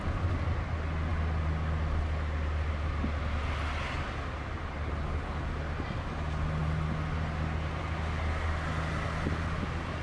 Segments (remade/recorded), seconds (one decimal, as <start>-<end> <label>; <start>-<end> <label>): 0.0-10.0 recorded